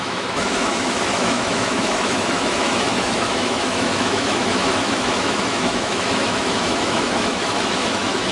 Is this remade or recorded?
remade